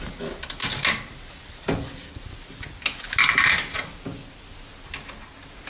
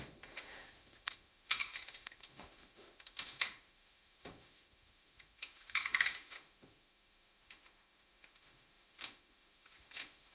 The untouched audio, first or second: first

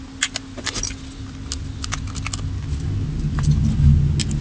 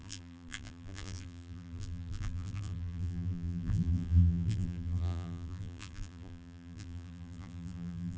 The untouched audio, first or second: first